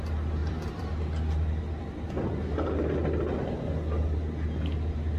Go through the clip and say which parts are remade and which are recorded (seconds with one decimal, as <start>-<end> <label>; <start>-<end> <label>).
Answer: 0.0-0.4 recorded; 0.4-0.9 remade; 0.9-5.2 recorded